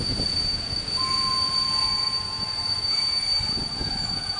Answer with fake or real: fake